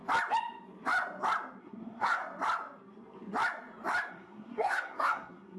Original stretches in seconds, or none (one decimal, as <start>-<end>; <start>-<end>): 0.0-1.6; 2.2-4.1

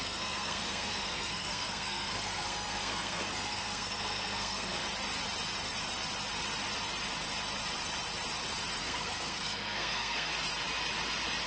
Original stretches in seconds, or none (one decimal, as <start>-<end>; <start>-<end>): 4.8-8.8; 10.3-11.5

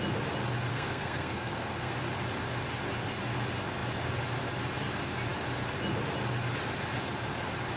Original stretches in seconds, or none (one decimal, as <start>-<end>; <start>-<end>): 0.0-0.7; 1.9-7.8

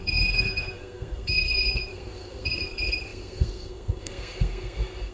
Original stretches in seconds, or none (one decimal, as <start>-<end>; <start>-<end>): none

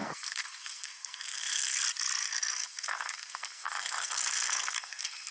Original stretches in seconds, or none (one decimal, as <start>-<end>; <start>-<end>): 1.8-2.2

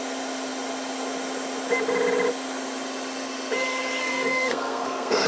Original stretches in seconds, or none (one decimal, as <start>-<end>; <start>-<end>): 0.0-4.0